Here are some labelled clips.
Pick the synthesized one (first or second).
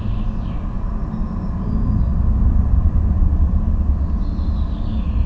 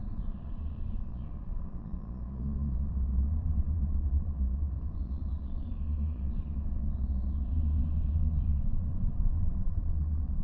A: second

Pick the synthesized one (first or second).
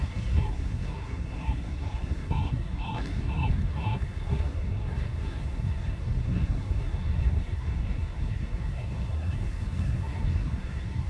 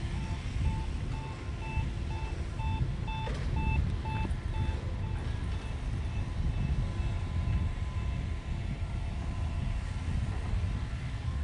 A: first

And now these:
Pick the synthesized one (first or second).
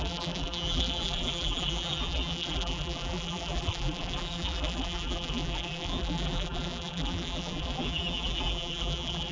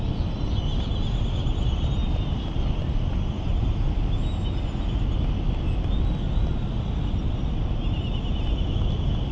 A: first